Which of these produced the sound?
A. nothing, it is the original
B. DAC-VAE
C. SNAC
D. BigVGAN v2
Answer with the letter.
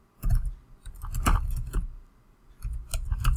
A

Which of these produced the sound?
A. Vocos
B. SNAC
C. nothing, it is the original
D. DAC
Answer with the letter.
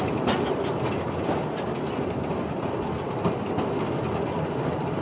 C